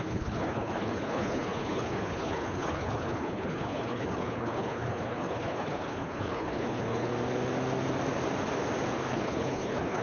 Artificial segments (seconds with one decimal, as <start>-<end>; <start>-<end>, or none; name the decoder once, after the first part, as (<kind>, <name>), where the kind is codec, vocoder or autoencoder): 0.0-7.1 (codec, HILCodec); 9.1-10.0